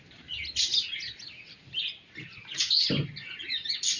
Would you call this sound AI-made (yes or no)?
no